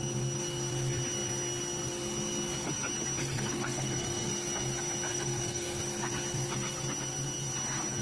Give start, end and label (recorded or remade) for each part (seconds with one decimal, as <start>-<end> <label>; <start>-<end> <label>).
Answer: 0.0-3.2 recorded; 3.2-4.3 remade; 4.3-5.1 recorded; 5.1-5.8 remade; 5.8-8.0 recorded